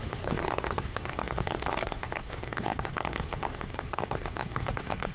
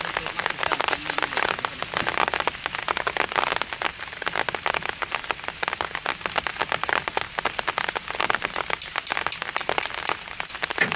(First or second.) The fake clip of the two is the first